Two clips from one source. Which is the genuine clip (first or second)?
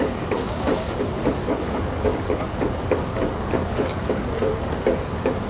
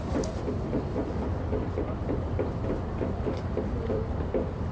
second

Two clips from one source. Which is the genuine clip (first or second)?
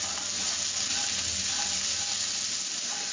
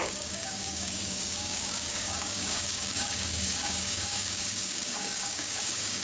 first